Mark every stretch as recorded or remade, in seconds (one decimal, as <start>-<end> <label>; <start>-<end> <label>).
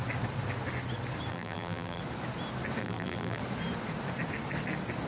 0.0-1.3 recorded; 1.3-2.0 remade; 2.0-2.8 recorded; 2.8-3.4 remade; 3.4-5.1 recorded